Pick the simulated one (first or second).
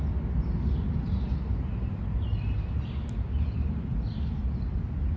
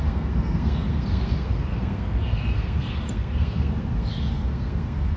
second